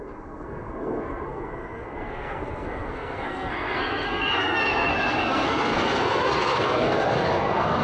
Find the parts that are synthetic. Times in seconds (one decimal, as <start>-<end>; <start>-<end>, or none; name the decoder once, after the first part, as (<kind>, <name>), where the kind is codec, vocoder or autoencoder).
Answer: 0.0-7.8 (codec, SNAC)